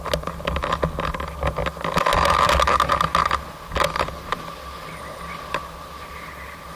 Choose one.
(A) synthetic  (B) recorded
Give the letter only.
B